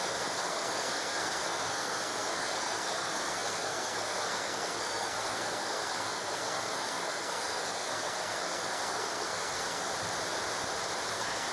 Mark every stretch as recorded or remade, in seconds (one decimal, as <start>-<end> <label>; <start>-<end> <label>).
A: 0.0-9.9 remade; 9.9-11.1 recorded; 11.1-11.5 remade